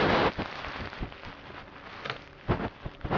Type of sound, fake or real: real